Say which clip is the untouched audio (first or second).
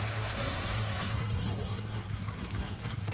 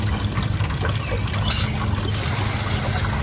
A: second